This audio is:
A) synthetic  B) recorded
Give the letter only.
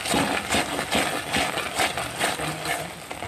B